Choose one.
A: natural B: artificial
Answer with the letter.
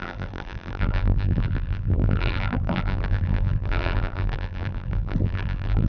B